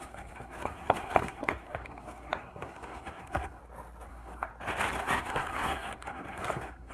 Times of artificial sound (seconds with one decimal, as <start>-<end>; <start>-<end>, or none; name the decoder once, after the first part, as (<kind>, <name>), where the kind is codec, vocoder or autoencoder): 0.0-3.6 (codec, SNAC); 4.1-4.5; 5.0-6.9